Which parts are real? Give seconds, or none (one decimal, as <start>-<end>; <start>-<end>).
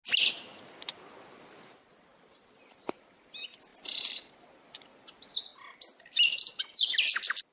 0.0-2.1; 3.0-3.7; 4.3-7.5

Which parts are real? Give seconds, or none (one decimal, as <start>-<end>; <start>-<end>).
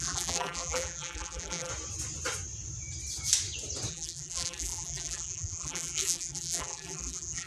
1.7-3.9